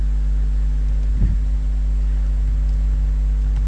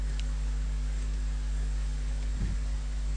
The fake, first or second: second